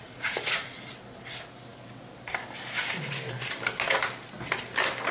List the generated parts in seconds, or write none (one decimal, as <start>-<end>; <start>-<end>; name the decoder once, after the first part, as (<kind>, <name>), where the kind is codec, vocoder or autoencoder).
0.0-0.9 (vocoder, Vocos)